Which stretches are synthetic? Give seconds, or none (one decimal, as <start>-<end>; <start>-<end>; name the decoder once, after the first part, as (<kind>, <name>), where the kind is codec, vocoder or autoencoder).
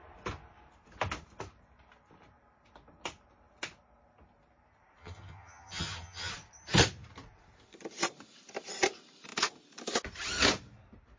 5.0-6.3 (vocoder, HiFi-GAN)